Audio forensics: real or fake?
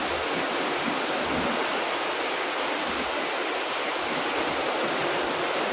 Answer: real